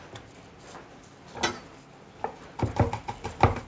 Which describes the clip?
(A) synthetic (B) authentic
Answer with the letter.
B